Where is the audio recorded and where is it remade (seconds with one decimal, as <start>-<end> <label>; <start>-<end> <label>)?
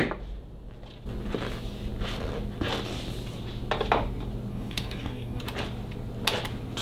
0.0-4.5 recorded; 4.5-5.4 remade; 5.4-6.8 recorded